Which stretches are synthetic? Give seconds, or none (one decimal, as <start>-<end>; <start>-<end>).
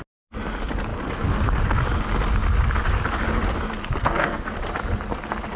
4.0-4.5